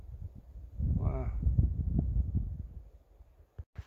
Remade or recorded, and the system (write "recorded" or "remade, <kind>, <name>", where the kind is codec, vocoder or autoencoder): recorded